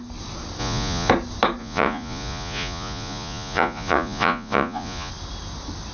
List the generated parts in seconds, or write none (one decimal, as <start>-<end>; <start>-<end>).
0.6-1.1; 1.6-5.1